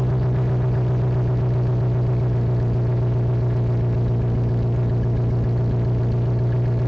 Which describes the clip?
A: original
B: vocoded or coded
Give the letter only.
A